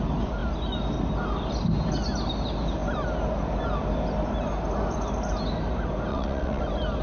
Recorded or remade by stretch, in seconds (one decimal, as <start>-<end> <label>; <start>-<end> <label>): 0.0-6.1 recorded; 6.1-6.6 remade; 6.6-7.0 recorded